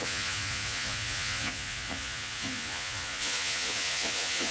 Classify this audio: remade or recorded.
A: remade